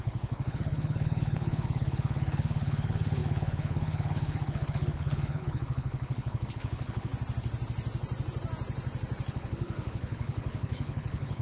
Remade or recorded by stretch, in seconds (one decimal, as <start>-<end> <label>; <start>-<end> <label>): 0.0-7.1 remade; 7.1-9.3 recorded; 9.3-11.4 remade